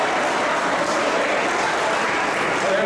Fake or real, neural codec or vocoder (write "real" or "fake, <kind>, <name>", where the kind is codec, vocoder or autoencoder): fake, vocoder, BigVGAN v2